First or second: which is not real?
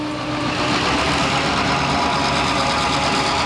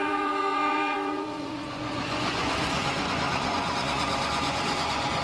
second